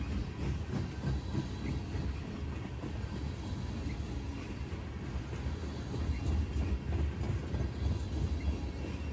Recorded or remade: recorded